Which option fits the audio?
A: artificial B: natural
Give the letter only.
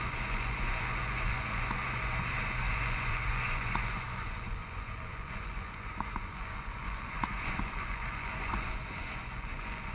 A